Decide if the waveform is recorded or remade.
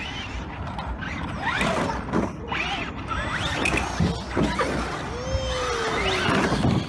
recorded